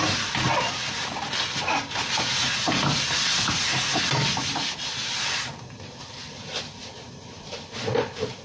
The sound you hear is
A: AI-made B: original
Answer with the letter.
B